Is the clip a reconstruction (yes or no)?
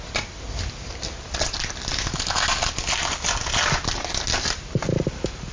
no